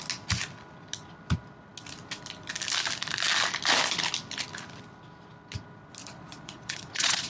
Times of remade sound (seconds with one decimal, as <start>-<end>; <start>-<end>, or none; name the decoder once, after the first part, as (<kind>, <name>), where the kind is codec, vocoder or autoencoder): 6.0-7.3 (vocoder, Vocos)